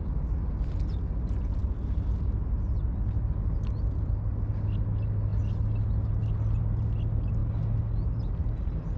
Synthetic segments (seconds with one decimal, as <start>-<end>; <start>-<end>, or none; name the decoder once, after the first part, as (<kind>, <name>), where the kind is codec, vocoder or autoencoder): none